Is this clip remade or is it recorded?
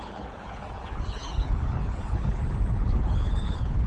remade